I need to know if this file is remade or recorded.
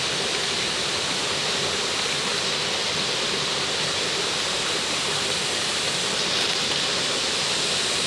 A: recorded